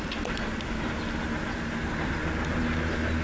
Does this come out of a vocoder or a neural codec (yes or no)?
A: no